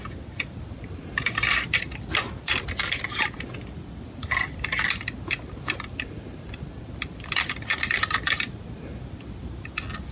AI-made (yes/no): no